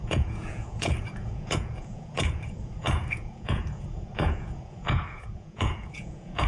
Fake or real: fake